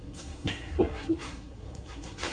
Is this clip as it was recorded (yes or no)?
no